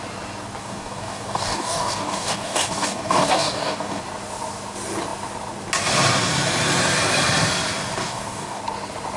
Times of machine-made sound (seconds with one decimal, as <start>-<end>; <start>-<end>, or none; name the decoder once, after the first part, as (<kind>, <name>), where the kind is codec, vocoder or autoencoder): 0.6-4.0 (codec, DAC); 8.0-8.6